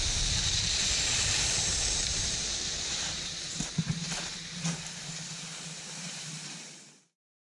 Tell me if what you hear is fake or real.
fake